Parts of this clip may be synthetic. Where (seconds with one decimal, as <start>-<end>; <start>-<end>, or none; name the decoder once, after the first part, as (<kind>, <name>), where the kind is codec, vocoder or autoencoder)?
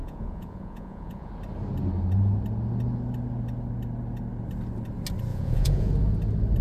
0.0-1.3 (vocoder, Vocos); 5.3-5.9